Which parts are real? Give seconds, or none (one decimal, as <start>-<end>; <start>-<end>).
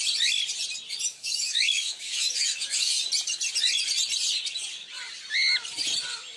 0.0-1.1; 3.0-6.4